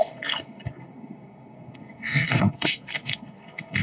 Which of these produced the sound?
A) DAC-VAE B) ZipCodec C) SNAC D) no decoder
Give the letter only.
C